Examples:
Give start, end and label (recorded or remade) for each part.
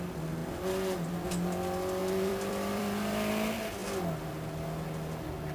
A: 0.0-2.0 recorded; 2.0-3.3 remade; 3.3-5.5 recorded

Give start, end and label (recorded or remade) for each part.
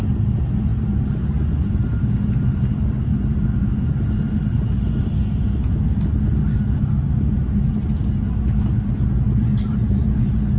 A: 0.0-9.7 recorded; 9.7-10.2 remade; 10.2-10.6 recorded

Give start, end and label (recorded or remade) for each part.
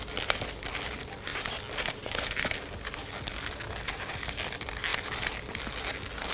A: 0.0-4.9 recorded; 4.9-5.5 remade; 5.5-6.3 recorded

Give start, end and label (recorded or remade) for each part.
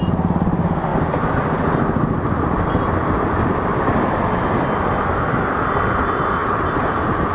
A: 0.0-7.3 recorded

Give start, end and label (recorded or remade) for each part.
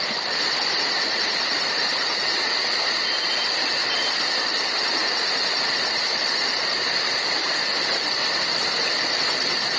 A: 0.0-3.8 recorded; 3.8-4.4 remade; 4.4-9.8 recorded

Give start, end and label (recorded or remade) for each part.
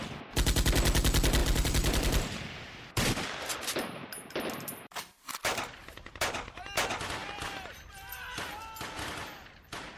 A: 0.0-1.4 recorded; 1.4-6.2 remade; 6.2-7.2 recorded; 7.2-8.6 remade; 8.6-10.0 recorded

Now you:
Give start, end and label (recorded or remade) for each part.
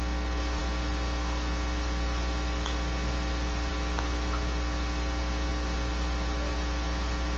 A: 0.0-7.4 recorded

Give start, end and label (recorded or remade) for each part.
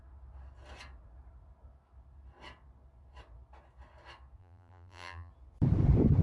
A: 0.0-4.4 recorded; 4.4-5.3 remade; 5.3-6.2 recorded